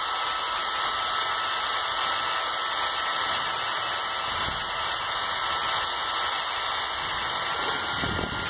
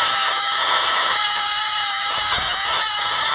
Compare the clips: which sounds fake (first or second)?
second